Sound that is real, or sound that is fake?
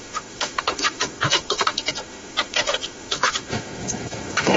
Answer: fake